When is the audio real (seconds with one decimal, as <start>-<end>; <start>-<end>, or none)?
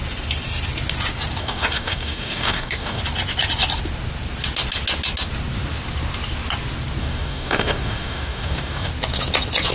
0.0-1.4; 3.0-7.0; 8.9-9.7